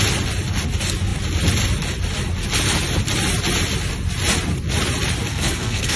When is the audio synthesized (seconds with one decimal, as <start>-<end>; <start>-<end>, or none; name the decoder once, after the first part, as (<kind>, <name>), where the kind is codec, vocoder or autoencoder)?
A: 5.3-6.0 (codec, SNAC)